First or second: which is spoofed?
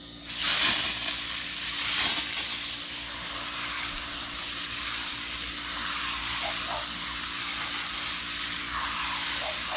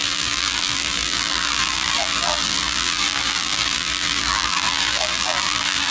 second